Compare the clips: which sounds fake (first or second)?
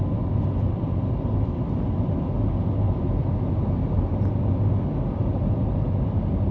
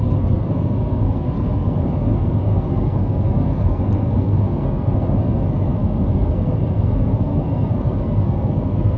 second